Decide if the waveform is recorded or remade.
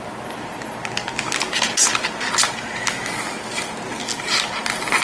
recorded